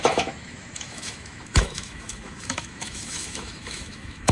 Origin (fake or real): fake